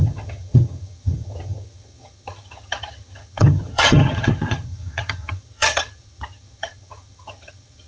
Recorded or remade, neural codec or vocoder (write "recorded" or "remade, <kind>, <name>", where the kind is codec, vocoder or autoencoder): remade, vocoder, HiFi-GAN